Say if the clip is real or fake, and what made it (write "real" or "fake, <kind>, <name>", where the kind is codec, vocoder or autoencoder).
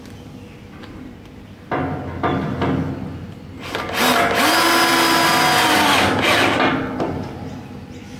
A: real